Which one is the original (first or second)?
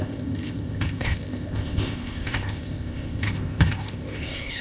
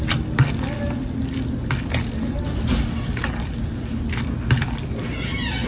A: second